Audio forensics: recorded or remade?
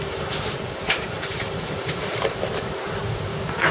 recorded